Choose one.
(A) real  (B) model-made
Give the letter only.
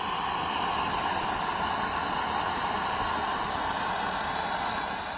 A